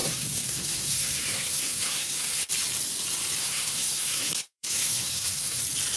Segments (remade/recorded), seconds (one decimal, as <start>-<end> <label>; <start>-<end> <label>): 0.0-2.5 remade; 2.5-3.4 recorded; 3.4-5.6 remade; 5.6-6.0 recorded